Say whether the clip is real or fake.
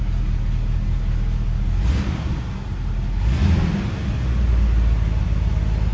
real